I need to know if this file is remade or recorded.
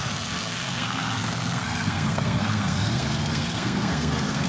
remade